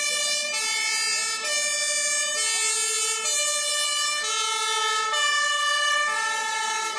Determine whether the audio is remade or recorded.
recorded